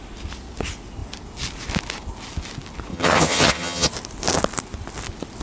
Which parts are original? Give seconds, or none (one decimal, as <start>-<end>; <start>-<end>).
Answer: 0.0-2.9; 3.9-5.4